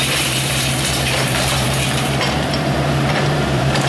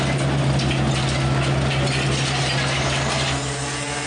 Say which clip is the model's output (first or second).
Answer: first